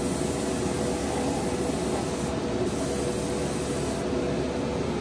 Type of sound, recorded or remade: recorded